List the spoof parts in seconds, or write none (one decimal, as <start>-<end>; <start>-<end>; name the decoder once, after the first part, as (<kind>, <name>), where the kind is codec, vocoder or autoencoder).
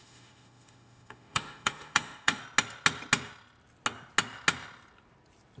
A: 0.0-2.4 (autoencoder, DAC-VAE)